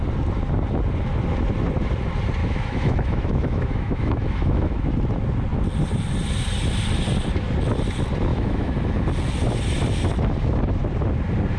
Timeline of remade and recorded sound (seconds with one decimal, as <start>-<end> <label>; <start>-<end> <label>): 0.0-2.4 recorded; 2.4-4.9 remade; 4.9-8.3 recorded; 8.3-9.1 remade; 9.1-11.6 recorded